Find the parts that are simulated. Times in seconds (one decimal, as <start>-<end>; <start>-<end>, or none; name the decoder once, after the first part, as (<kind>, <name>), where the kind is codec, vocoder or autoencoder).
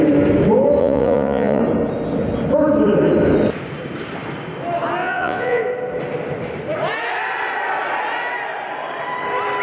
0.8-1.6 (vocoder, Vocos); 5.0-5.6